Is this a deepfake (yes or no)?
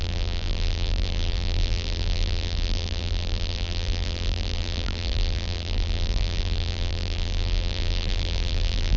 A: yes